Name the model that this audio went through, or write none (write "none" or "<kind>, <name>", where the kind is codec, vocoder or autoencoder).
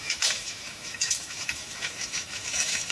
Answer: autoencoder, DAC-VAE